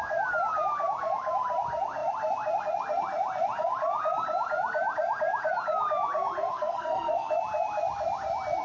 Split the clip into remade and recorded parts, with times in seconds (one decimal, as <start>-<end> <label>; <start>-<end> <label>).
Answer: 0.0-6.5 recorded; 6.5-7.3 remade; 7.3-8.6 recorded